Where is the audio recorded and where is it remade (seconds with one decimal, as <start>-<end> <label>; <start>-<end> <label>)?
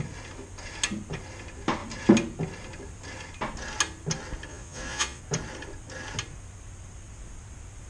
0.0-4.5 recorded; 4.5-5.2 remade; 5.2-7.9 recorded